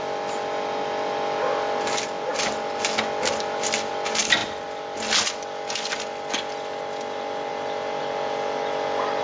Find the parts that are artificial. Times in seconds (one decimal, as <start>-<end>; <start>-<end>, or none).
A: 4.4-5.0